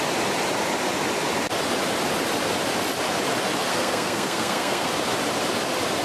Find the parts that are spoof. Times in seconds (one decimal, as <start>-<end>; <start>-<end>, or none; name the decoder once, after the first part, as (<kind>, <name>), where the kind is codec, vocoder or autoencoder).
3.7-4.9 (codec, SNAC)